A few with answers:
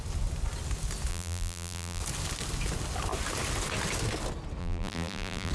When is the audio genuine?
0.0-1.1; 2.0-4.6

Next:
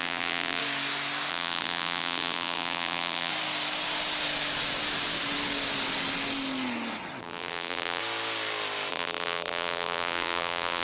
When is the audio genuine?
0.6-1.3; 3.3-7.2; 8.0-8.9

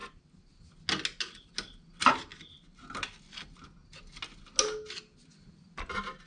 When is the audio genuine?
0.0-6.3

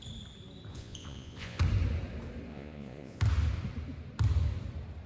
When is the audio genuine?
0.0-0.7; 1.6-2.5; 3.2-5.1

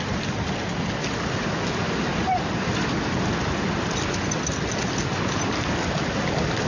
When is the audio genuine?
0.0-6.7

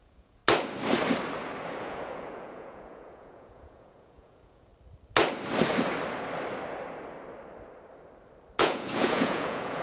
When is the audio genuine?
0.4-1.8; 4.7-8.6